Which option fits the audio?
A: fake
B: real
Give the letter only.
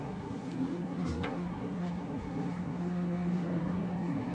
A